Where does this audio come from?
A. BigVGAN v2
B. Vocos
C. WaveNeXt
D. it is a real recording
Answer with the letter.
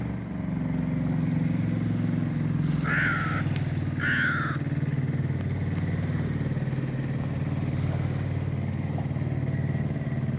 D